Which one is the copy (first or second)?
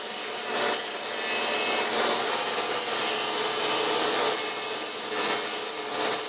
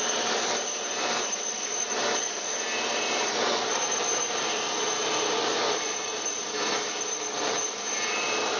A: second